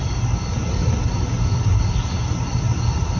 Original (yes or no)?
yes